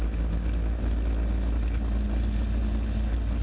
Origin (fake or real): real